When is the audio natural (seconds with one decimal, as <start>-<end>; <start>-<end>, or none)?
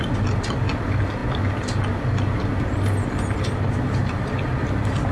0.0-5.1